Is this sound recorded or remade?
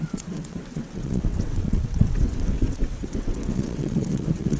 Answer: remade